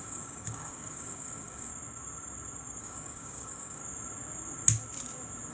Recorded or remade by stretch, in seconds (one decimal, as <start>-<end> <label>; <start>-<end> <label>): 0.0-1.7 remade; 1.7-2.8 recorded; 2.8-3.8 remade; 3.8-5.5 recorded